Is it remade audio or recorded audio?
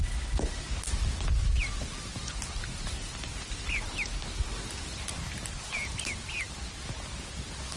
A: recorded